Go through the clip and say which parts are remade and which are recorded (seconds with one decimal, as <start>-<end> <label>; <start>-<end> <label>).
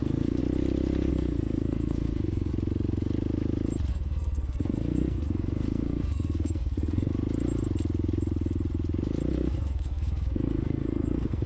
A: 0.0-0.4 remade; 0.4-1.1 recorded; 1.1-2.5 remade; 2.5-3.9 recorded; 3.9-7.1 remade; 7.1-9.3 recorded; 9.3-11.5 remade